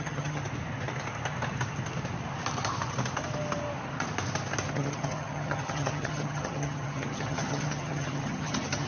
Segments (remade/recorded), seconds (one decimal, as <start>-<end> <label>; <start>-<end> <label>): 0.0-0.4 remade; 0.4-4.7 recorded; 4.7-8.9 remade